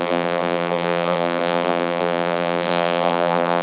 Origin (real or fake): fake